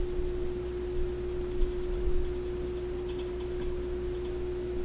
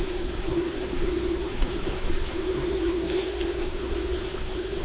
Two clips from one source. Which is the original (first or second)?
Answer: first